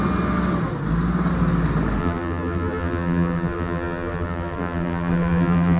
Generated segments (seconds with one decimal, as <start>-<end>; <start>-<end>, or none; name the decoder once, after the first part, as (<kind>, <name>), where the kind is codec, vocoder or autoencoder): 2.0-5.8 (vocoder, BigVGAN v2)